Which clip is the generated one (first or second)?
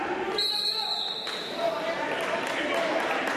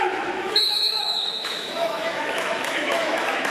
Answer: second